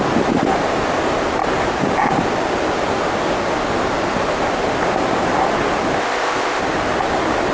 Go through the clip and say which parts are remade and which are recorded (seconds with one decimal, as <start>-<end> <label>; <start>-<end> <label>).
0.0-6.0 recorded; 6.0-6.6 remade; 6.6-7.5 recorded